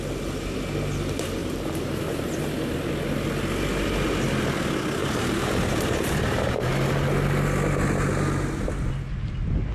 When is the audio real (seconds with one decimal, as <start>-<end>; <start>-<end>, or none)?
0.0-1.4; 2.0-5.0; 6.9-9.7